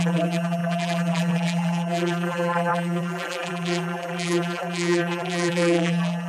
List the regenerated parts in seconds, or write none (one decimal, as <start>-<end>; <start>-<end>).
0.0-6.3